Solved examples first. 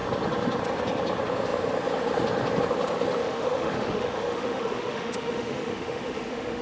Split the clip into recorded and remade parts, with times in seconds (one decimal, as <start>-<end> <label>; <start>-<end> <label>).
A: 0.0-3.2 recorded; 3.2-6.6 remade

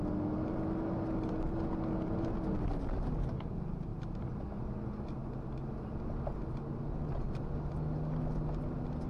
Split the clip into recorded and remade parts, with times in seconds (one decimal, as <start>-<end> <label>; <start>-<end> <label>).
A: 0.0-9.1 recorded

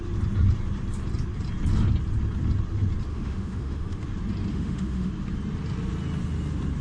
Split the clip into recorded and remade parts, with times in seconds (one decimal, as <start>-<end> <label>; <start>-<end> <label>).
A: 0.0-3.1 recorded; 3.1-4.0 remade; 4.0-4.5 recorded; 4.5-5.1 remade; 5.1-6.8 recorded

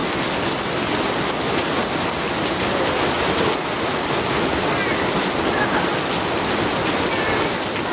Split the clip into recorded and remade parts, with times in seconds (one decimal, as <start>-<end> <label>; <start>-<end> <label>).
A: 0.0-7.9 recorded

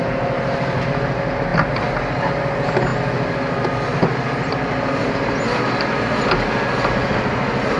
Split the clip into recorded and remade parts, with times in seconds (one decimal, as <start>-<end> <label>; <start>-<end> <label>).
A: 0.0-7.8 recorded